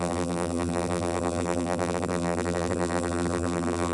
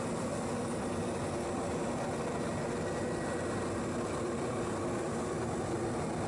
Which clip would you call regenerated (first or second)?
first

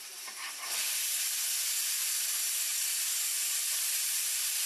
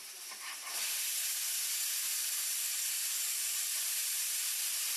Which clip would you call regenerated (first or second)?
second